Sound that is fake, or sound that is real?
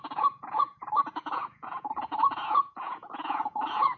fake